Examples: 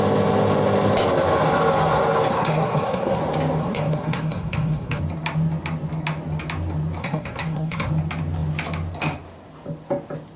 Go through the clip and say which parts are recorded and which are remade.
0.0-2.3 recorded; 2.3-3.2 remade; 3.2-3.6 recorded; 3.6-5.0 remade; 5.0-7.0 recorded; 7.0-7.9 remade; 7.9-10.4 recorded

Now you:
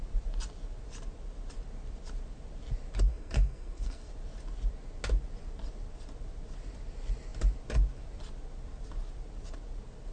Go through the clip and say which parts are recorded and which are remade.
0.0-3.1 recorded; 3.1-4.1 remade; 4.1-10.1 recorded

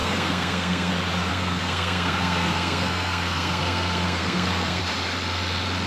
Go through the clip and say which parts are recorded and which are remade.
0.0-0.9 remade; 0.9-1.3 recorded; 1.3-4.8 remade; 4.8-5.9 recorded

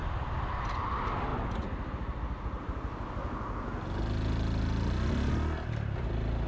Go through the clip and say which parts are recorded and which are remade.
0.0-6.5 recorded

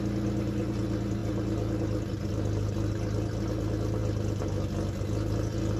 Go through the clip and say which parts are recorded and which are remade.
0.0-5.8 recorded